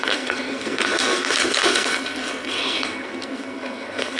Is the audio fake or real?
fake